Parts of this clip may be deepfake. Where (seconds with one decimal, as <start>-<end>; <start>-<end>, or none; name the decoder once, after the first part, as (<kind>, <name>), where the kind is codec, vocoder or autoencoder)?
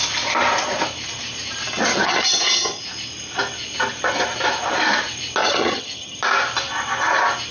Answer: 1.9-2.8 (vocoder, HiFi-GAN); 5.4-6.2